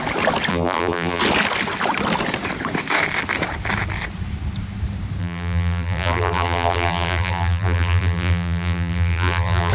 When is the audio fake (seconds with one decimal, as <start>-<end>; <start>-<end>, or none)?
0.5-1.2; 5.2-9.7